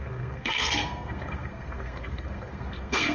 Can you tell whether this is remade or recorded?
remade